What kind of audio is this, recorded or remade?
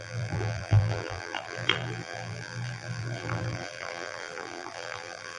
remade